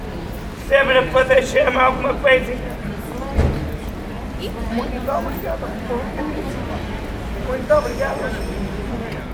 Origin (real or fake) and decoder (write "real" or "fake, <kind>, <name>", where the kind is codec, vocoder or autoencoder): real